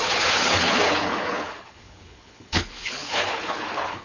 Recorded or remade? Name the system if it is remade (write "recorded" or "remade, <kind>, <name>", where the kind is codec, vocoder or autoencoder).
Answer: remade, codec, HILCodec